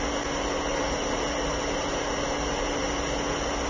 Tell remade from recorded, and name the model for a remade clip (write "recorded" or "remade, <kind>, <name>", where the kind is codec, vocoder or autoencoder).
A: recorded